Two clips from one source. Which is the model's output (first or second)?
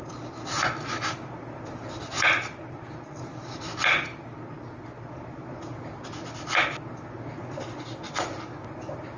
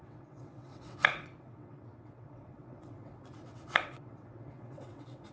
second